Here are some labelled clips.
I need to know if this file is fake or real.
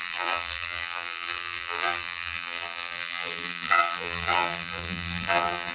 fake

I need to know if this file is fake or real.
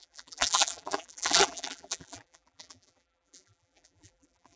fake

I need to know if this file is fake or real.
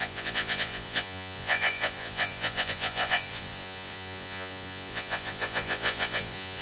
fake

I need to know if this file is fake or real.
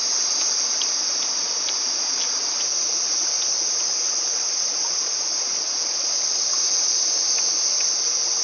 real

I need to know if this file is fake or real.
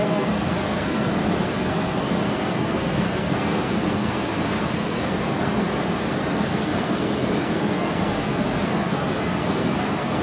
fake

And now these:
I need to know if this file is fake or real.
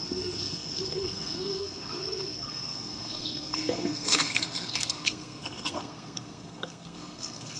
fake